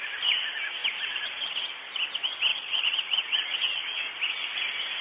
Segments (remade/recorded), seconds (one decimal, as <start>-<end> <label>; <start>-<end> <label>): 0.0-2.5 recorded; 2.5-4.1 remade; 4.1-5.0 recorded